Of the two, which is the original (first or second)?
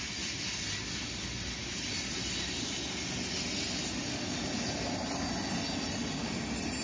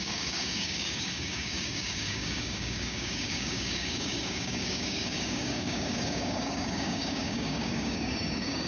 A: first